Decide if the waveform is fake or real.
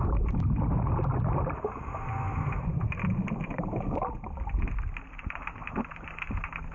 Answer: real